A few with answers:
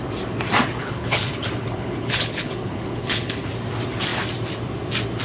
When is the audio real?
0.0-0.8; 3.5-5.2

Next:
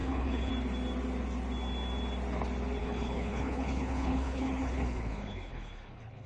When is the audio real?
0.5-2.8